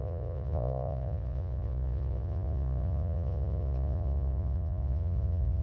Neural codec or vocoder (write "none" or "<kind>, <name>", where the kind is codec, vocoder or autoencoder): vocoder, Vocos